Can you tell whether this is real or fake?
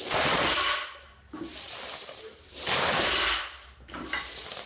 real